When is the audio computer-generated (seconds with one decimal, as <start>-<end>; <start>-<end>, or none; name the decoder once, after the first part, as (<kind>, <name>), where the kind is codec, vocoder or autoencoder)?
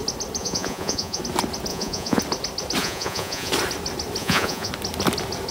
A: 0.4-1.2 (vocoder, Vocos); 1.7-2.2; 2.8-3.5; 4.2-4.7